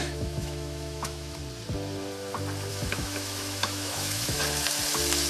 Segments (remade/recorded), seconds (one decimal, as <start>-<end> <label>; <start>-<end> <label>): 0.0-1.4 remade; 1.4-2.7 recorded; 2.7-4.4 remade; 4.4-5.3 recorded